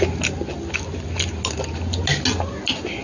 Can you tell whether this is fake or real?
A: real